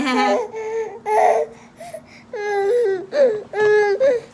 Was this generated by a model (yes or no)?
no